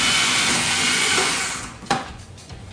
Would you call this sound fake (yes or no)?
yes